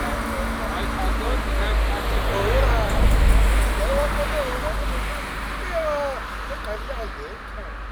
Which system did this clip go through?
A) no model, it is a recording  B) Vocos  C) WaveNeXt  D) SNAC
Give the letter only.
A